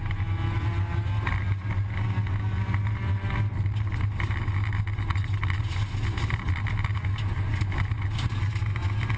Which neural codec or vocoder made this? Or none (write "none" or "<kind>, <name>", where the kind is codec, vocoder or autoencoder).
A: none